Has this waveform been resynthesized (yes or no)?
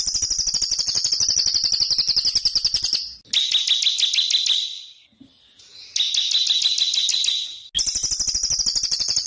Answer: no